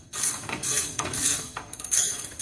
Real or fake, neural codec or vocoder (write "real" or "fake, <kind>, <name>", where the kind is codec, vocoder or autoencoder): fake, codec, SNAC